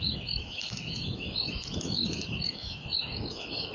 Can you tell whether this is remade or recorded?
remade